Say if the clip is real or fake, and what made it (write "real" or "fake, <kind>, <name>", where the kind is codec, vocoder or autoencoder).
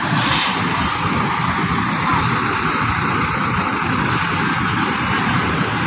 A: real